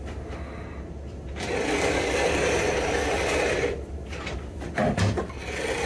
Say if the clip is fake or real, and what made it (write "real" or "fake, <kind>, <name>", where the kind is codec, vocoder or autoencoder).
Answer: real